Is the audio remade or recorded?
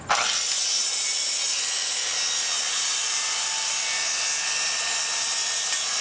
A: recorded